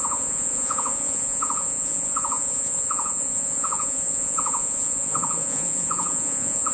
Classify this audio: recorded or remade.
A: remade